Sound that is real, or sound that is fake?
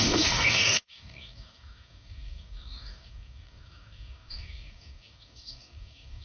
fake